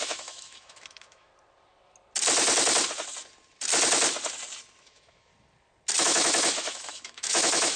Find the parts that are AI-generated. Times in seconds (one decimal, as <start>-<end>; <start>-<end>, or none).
0.0-1.3; 4.8-5.3; 6.0-7.8

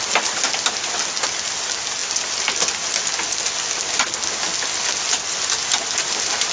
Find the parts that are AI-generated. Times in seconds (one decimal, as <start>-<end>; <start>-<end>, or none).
none

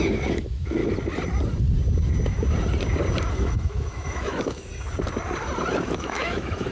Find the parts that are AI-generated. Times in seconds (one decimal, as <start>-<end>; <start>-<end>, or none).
0.0-0.8; 3.3-4.7; 5.8-6.7

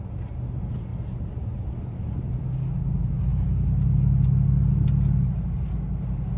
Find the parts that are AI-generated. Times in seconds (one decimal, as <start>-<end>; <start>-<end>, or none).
none